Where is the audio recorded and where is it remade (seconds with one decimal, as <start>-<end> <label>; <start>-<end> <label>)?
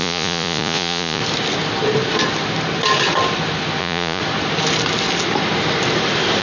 0.0-1.2 remade; 1.2-3.8 recorded; 3.8-4.2 remade; 4.2-6.4 recorded